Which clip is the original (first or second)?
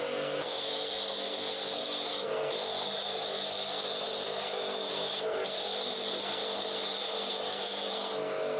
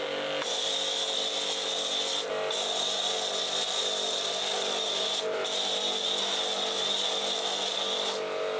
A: second